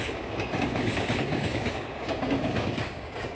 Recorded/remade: remade